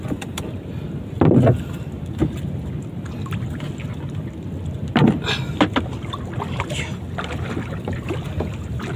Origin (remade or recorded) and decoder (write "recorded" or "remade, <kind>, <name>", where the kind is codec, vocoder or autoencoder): recorded